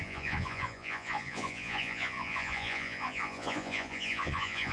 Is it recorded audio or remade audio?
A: remade